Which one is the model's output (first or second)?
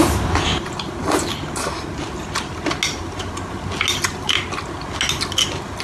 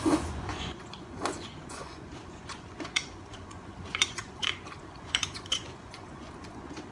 second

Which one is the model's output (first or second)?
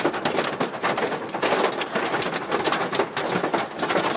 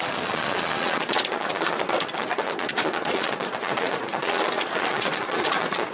second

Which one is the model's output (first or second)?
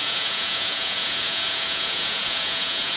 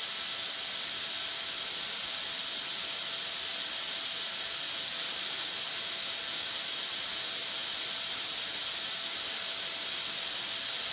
first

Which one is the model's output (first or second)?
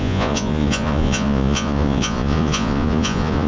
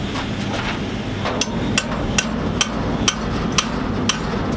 first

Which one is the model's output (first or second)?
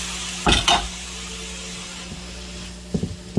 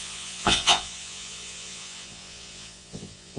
second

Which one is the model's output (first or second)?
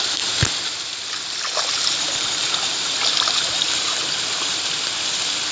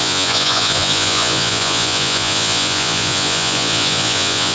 second